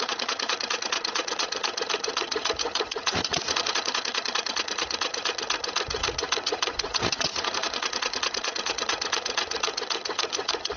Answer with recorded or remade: remade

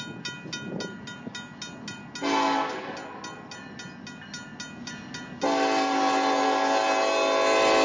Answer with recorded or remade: recorded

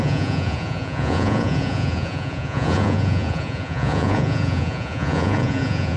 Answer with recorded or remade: remade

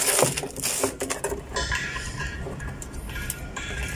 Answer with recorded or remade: recorded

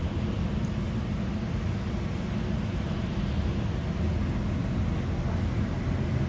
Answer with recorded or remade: recorded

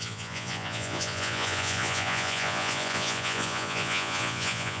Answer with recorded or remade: remade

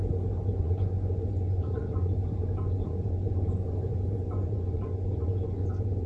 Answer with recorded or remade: remade